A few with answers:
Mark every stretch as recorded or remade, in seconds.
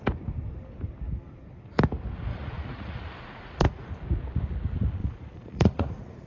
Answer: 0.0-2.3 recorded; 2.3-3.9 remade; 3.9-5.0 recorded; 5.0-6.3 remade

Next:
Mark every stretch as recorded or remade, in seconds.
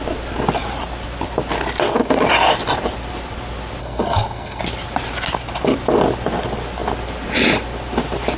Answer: 0.0-3.8 recorded; 3.8-4.6 remade; 4.6-8.4 recorded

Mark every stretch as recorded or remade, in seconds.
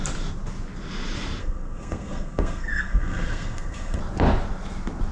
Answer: 0.0-1.4 recorded; 1.4-4.0 remade; 4.0-5.1 recorded